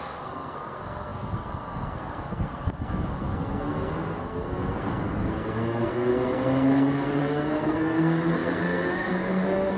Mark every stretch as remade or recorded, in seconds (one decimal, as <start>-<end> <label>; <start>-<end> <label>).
0.0-9.8 remade